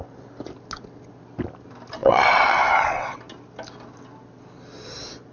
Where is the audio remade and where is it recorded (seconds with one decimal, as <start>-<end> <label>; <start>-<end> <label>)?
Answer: 0.0-2.0 recorded; 2.0-3.2 remade; 3.2-5.3 recorded